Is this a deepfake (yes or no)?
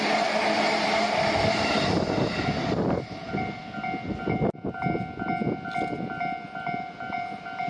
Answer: no